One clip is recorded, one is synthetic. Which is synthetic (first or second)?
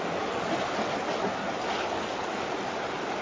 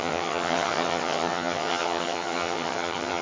second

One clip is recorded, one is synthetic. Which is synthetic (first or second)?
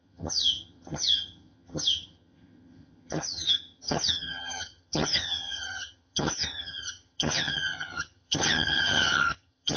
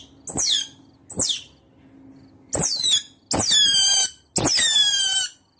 first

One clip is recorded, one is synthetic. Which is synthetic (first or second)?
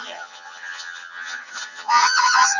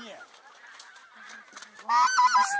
first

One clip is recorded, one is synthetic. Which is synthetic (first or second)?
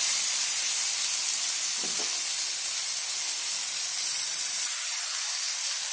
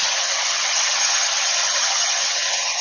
second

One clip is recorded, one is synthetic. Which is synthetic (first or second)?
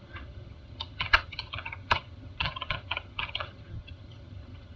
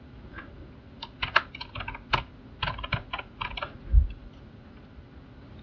first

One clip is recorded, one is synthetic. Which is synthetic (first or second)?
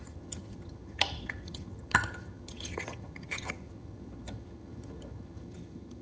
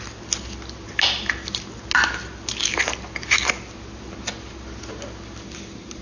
first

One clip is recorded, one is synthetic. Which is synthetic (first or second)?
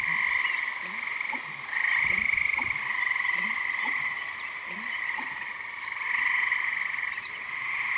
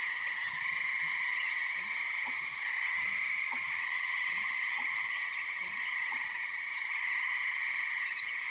second